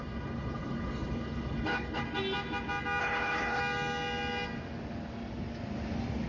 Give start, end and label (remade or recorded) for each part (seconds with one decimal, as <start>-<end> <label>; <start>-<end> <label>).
0.0-2.0 remade; 2.0-3.0 recorded; 3.0-3.6 remade; 3.6-6.3 recorded